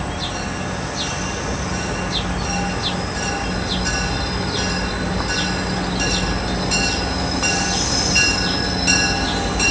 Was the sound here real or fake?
real